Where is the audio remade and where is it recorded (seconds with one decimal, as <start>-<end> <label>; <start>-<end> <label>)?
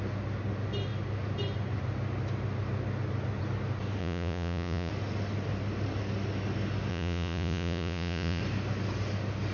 0.0-4.0 recorded; 4.0-4.9 remade; 4.9-6.9 recorded; 6.9-8.4 remade; 8.4-9.5 recorded